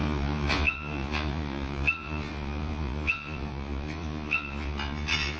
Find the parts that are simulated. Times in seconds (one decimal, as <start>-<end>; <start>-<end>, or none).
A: 0.0-5.4